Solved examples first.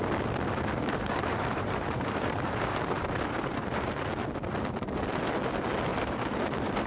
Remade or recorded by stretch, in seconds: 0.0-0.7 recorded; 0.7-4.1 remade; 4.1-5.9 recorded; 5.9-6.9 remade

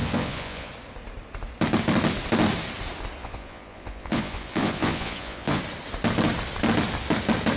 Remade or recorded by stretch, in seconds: 0.0-0.7 remade; 0.7-3.2 recorded; 3.2-5.6 remade; 5.6-7.6 recorded